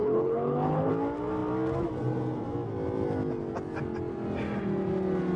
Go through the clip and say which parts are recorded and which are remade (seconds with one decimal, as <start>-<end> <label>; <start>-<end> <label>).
0.0-0.9 remade; 0.9-5.4 recorded